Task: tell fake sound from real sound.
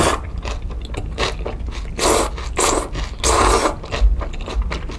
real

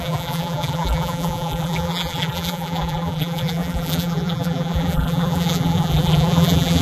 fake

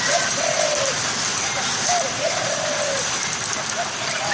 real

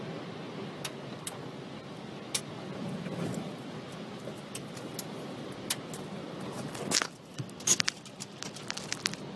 real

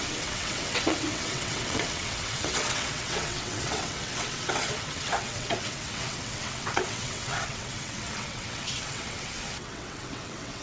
fake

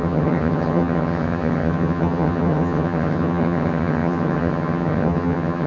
fake